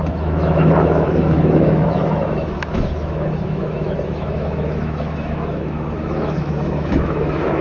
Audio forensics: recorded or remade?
remade